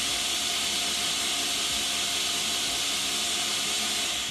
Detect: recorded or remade recorded